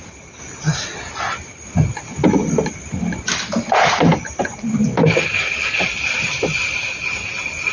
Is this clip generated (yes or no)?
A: no